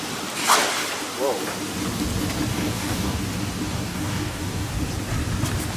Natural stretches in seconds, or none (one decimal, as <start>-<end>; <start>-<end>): 0.0-2.5; 3.2-3.6; 4.7-5.8